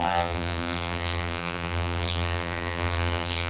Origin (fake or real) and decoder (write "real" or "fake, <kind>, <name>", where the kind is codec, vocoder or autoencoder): fake, vocoder, BigVGAN v2